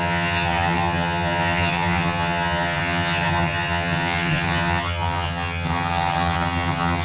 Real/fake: fake